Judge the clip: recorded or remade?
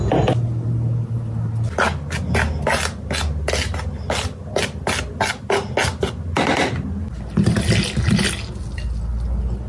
recorded